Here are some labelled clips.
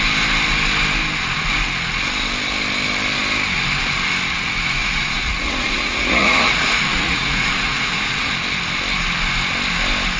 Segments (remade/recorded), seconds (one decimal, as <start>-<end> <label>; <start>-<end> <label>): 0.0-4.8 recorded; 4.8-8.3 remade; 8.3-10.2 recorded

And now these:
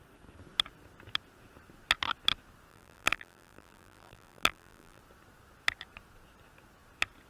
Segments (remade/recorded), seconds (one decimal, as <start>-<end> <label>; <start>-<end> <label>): 0.0-2.7 recorded; 2.7-5.0 remade; 5.0-7.3 recorded

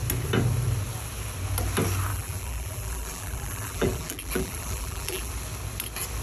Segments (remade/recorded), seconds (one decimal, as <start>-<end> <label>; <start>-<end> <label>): 0.0-2.1 recorded; 2.1-5.3 remade; 5.3-6.2 recorded

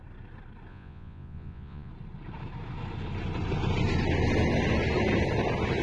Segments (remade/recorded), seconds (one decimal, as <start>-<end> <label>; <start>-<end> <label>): 0.0-0.7 recorded; 0.7-1.9 remade; 1.9-5.8 recorded

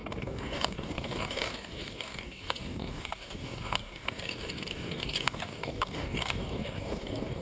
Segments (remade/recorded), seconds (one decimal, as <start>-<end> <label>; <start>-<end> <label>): 0.0-7.4 remade